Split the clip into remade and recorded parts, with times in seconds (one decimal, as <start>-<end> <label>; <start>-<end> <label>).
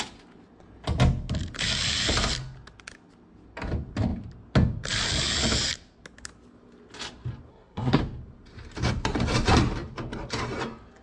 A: 0.0-7.5 recorded; 7.5-8.0 remade; 8.0-11.0 recorded